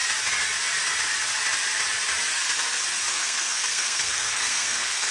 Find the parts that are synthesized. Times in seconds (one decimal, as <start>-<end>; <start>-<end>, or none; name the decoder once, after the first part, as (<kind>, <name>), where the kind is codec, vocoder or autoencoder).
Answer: 3.1-5.1 (codec, SNAC)